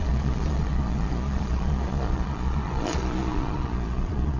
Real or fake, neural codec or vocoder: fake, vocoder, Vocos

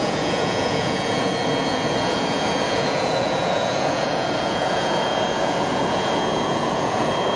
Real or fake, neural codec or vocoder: fake, vocoder, Vocos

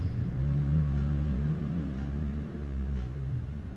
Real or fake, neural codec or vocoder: fake, vocoder, Vocos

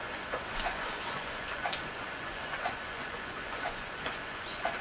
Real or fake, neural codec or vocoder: fake, vocoder, Vocos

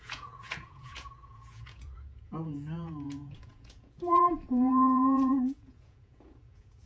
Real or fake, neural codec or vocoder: fake, vocoder, Vocos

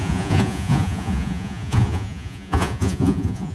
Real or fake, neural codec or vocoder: fake, vocoder, Vocos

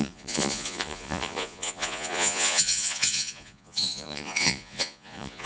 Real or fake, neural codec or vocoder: fake, vocoder, Vocos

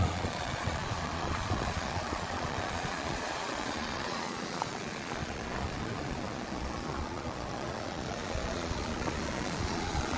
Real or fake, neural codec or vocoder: fake, vocoder, Vocos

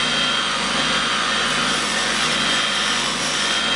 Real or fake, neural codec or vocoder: fake, vocoder, Vocos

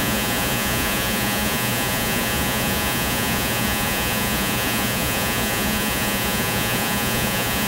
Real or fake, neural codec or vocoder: fake, vocoder, Vocos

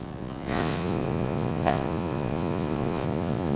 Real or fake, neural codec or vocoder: fake, vocoder, Vocos